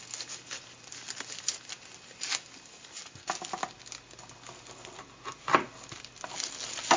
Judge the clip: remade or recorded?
recorded